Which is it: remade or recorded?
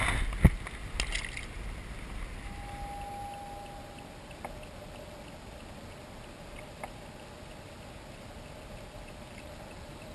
recorded